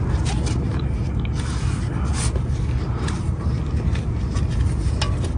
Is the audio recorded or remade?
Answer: recorded